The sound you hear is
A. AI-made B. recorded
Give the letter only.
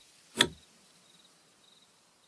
B